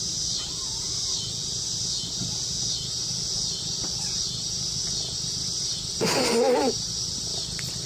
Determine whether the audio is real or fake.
real